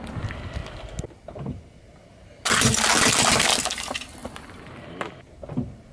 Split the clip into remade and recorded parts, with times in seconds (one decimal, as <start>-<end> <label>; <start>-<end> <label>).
0.0-4.2 recorded; 4.2-5.3 remade; 5.3-5.9 recorded